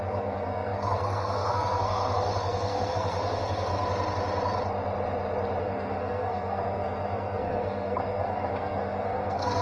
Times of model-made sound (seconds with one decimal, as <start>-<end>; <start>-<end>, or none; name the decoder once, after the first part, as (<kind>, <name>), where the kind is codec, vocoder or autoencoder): 0.0-3.7 (codec, SNAC); 5.6-9.6